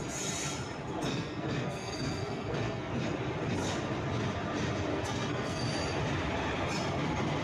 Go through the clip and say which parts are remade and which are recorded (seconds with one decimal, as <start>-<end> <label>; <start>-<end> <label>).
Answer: 0.0-1.1 recorded; 1.1-2.9 remade; 2.9-4.9 recorded; 4.9-5.6 remade; 5.6-7.4 recorded